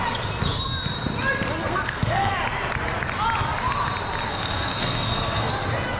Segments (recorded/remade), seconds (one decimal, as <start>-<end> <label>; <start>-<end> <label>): 0.0-1.6 recorded; 1.6-2.3 remade; 2.3-4.3 recorded; 4.3-5.5 remade; 5.5-6.0 recorded